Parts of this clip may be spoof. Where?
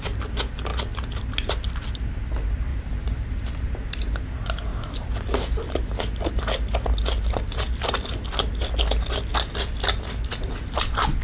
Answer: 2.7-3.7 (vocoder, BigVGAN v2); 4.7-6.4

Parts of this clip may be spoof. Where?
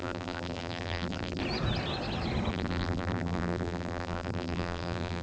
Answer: 0.0-1.4 (vocoder, BigVGAN v2); 2.5-5.2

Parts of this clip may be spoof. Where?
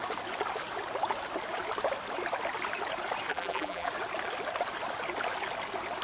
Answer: 3.3-3.9 (vocoder, BigVGAN v2)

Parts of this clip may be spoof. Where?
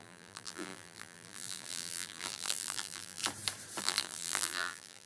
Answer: 0.0-3.2 (vocoder, BigVGAN v2); 3.8-5.1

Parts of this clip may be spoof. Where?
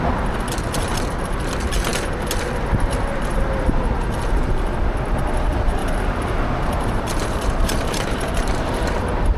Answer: 5.8-9.0 (vocoder, BigVGAN v2)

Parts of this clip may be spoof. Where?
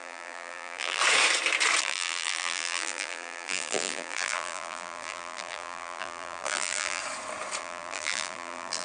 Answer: 0.0-1.0 (vocoder, BigVGAN v2); 1.8-7.0; 7.6-8.8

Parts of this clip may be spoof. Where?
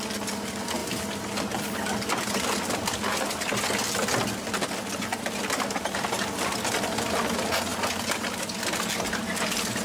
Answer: none